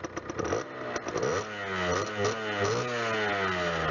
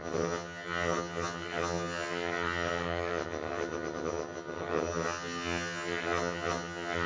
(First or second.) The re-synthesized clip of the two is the second